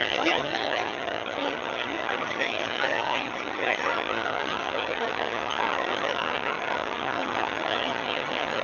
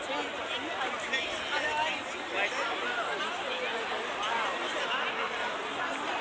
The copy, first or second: first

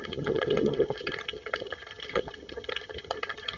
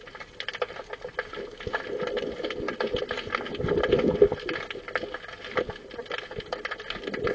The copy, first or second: first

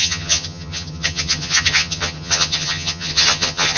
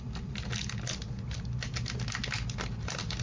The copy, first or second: first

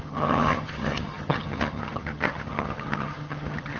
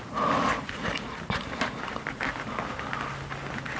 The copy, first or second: first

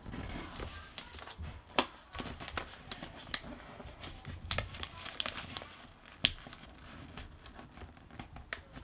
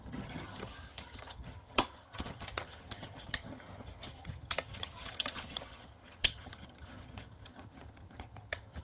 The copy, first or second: second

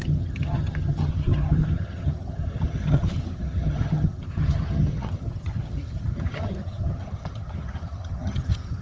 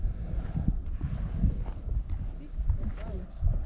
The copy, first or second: first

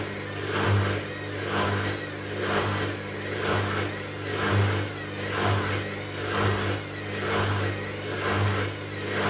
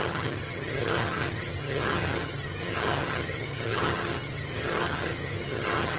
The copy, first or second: second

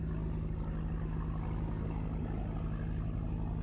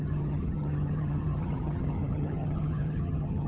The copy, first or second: second